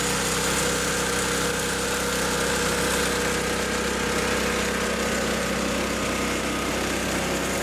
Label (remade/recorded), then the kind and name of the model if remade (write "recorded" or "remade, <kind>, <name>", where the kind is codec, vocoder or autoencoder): recorded